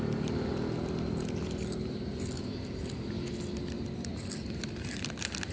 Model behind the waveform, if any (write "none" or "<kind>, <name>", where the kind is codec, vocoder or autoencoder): none